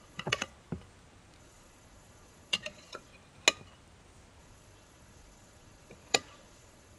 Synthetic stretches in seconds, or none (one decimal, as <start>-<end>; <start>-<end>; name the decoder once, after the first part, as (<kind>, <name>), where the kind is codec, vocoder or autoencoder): 0.0-0.5 (vocoder, Vocos); 1.4-3.1; 4.4-7.0